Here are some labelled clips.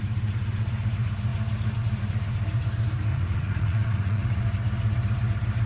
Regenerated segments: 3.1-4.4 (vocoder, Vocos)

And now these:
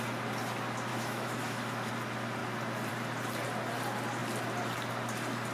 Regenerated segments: 0.9-1.9 (autoencoder, DAC-VAE)